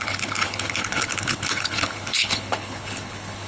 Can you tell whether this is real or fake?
fake